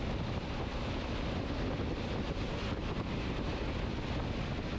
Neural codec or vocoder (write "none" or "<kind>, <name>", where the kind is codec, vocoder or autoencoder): none